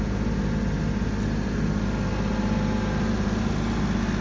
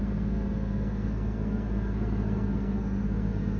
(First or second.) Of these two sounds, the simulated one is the second